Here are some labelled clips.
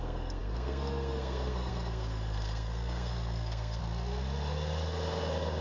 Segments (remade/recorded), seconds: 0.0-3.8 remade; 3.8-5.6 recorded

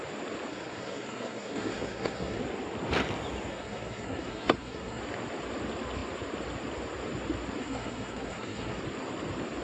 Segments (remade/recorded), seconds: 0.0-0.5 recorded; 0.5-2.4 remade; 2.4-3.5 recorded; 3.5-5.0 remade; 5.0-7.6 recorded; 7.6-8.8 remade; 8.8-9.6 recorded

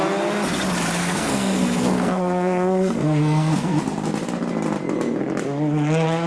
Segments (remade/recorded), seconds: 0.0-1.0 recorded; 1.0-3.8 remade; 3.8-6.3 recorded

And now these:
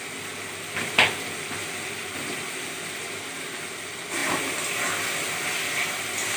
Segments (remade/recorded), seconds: 0.0-6.4 recorded